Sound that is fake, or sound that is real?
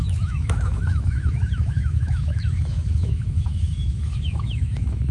fake